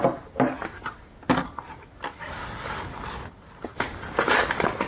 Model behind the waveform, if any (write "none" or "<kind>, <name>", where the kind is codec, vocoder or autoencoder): none